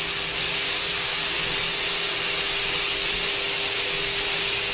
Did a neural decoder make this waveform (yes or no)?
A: no